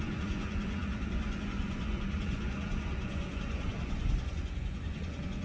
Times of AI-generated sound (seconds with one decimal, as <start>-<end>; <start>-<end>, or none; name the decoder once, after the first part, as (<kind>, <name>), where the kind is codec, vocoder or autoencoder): 0.0-5.4 (vocoder, Vocos)